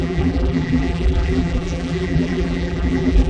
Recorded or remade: remade